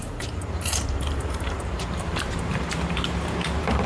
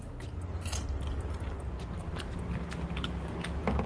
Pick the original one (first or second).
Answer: second